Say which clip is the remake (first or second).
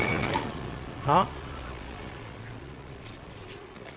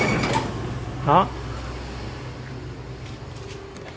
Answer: first